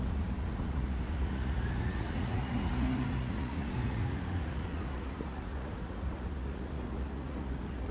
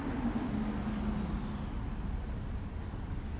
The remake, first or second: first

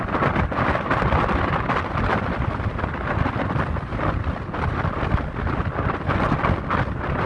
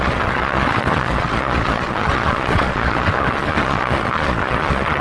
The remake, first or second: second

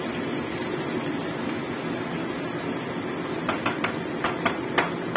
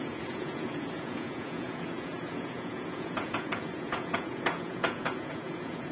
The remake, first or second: second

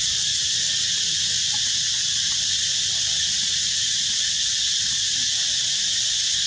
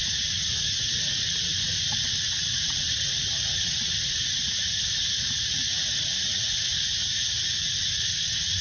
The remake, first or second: second